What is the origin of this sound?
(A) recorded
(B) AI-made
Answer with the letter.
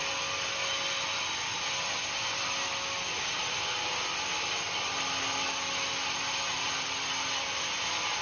A